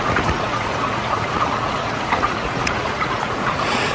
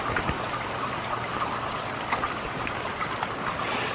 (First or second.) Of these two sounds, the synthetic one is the first